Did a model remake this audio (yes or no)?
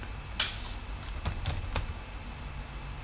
no